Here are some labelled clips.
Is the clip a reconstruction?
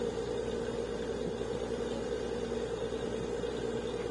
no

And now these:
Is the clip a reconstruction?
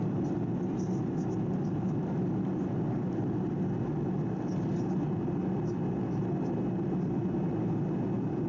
no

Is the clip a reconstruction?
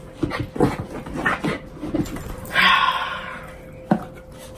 no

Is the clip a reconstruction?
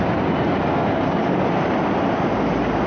no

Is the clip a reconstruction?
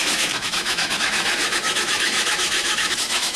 yes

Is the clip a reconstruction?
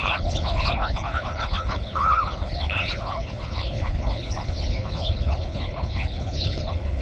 yes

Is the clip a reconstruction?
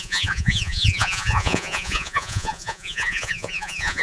yes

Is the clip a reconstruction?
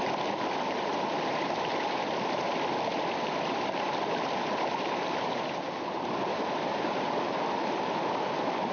yes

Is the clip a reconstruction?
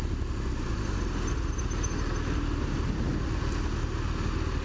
no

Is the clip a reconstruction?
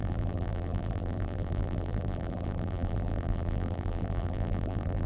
yes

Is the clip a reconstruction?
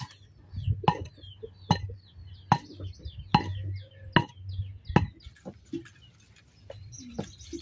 no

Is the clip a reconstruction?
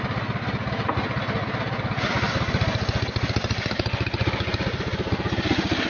no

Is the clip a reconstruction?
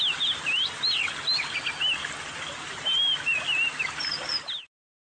no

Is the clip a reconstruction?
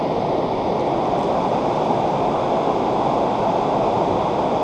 no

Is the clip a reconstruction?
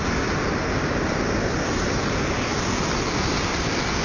no